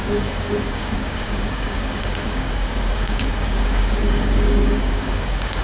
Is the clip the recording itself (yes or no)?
no